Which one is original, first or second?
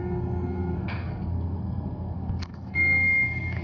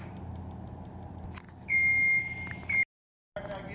second